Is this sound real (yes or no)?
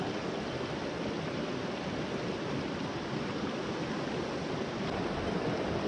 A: yes